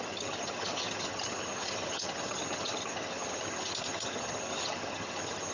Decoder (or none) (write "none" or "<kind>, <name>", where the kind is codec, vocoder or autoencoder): vocoder, HiFi-GAN